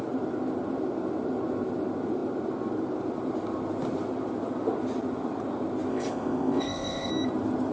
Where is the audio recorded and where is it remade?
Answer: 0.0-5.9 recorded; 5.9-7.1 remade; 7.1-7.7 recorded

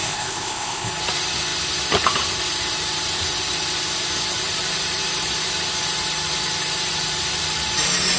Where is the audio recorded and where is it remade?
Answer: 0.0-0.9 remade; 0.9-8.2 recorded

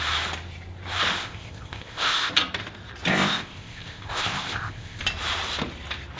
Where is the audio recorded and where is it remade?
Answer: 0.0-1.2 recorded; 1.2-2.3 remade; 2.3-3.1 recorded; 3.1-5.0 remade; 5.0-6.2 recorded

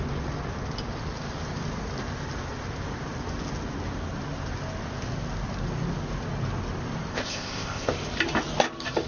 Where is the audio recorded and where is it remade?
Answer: 0.0-7.1 recorded; 7.1-7.9 remade; 7.9-9.1 recorded

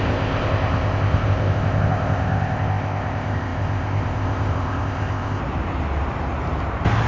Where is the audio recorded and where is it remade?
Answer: 0.0-5.4 remade; 5.4-7.1 recorded

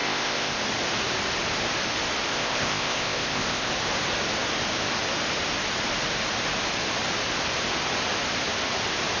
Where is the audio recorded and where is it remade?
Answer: 0.0-0.6 remade; 0.6-2.3 recorded; 2.3-3.7 remade; 3.7-9.2 recorded